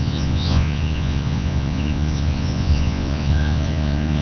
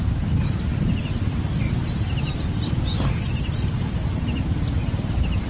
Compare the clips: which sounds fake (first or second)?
first